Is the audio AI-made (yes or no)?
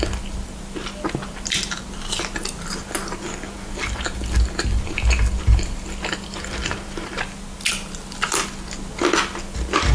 no